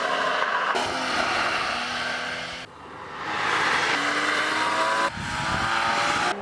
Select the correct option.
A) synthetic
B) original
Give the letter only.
B